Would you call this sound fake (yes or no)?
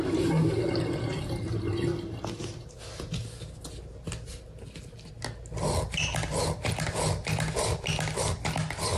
no